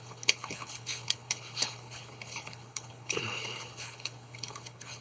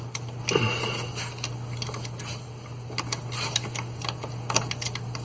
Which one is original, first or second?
second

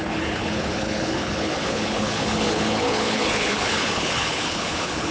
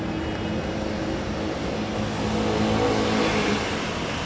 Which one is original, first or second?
second